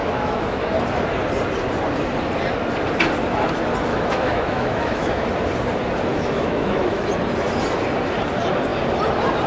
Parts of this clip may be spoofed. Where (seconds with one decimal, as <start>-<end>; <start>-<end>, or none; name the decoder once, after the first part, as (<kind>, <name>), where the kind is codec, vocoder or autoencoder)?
0.0-0.6 (autoencoder, DAC-VAE); 3.9-5.3; 6.1-7.1